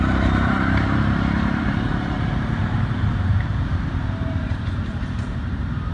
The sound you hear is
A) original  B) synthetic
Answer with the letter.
B